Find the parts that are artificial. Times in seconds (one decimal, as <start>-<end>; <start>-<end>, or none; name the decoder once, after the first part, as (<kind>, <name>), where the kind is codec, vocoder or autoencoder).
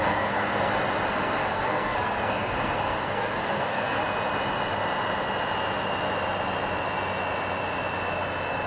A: 0.0-0.7 (codec, SNAC); 1.1-4.0